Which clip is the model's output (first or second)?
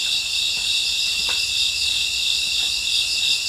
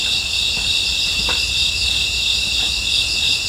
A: first